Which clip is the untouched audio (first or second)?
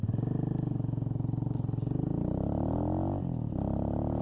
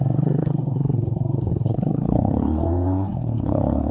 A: first